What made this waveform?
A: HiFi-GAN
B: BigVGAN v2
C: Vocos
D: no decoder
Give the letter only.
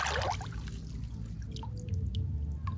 D